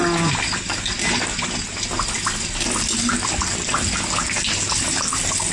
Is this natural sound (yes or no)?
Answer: yes